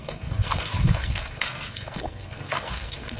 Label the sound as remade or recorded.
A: remade